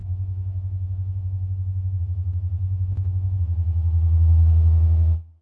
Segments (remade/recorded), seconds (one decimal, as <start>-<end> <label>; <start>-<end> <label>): 0.0-2.0 remade; 2.0-2.6 recorded; 2.6-3.4 remade; 3.4-5.4 recorded